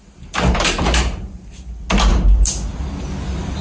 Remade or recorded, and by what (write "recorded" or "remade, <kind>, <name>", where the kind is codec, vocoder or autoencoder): recorded